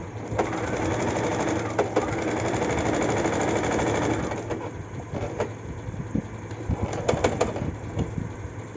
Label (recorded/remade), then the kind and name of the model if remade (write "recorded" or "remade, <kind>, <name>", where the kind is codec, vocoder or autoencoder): recorded